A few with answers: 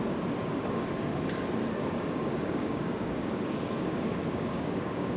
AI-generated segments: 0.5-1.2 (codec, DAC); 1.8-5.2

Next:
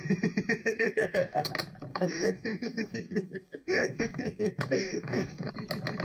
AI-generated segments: 0.6-1.5 (codec, DAC); 1.9-5.5

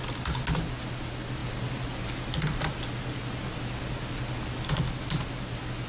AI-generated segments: none

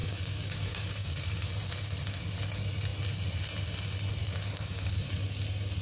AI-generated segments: 0.0-1.5 (codec, DAC); 4.2-5.1